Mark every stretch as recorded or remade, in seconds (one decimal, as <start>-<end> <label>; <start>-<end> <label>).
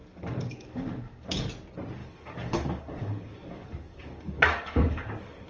0.0-1.5 remade; 1.5-2.0 recorded; 2.0-5.5 remade